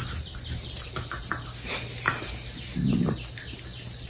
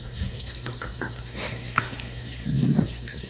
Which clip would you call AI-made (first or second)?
second